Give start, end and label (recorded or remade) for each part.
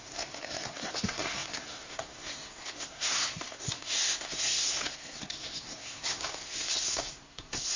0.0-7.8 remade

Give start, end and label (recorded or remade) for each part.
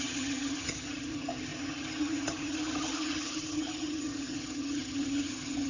0.0-5.7 remade